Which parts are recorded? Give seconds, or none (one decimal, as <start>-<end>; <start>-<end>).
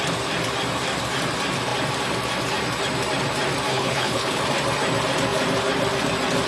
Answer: 0.0-3.7; 4.4-6.5